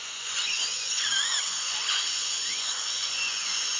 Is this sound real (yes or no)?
no